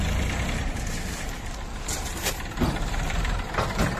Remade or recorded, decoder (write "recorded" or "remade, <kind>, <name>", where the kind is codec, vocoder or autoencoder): remade, vocoder, BigVGAN v2